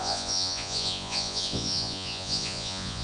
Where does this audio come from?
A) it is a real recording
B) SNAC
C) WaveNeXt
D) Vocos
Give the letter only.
D